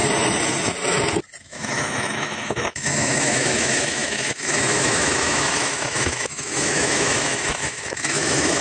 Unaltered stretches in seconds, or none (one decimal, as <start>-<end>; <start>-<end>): 0.0-1.4